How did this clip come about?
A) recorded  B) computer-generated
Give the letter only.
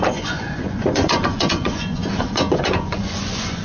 B